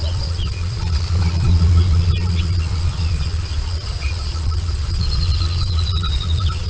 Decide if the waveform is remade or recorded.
remade